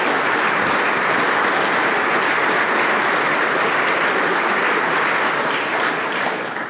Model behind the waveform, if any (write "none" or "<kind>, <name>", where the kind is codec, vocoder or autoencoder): none